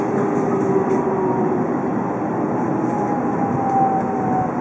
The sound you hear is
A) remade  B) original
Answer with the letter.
B